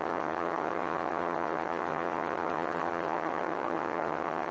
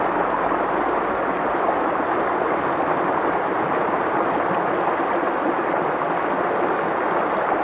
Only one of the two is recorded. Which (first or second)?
second